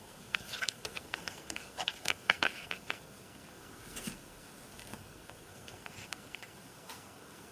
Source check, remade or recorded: remade